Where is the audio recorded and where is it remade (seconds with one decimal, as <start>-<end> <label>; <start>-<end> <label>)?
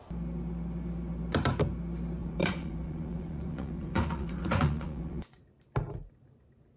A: 0.0-2.2 recorded; 2.2-5.4 remade; 5.4-6.8 recorded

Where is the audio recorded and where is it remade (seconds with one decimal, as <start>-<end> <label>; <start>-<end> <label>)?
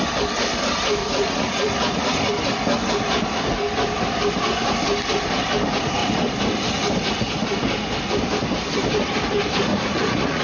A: 0.0-1.0 recorded; 1.0-2.3 remade; 2.3-9.7 recorded; 9.7-10.4 remade